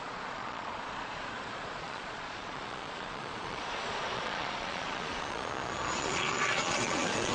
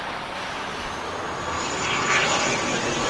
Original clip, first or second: second